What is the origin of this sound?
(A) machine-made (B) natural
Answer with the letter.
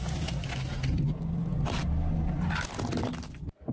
B